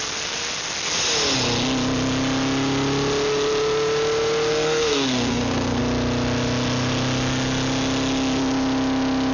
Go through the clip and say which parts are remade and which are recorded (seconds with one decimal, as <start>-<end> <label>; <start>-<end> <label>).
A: 0.0-4.5 recorded; 4.5-5.8 remade; 5.8-9.3 recorded